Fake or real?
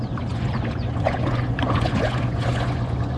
fake